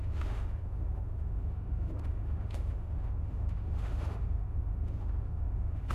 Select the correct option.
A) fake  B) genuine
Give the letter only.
A